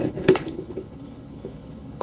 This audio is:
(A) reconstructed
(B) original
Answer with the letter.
A